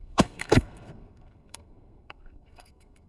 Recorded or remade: remade